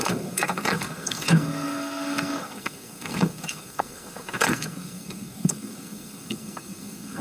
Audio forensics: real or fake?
fake